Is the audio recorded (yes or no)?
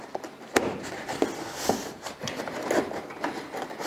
yes